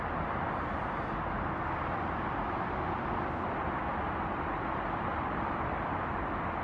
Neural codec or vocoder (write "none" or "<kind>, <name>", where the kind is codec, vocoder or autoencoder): none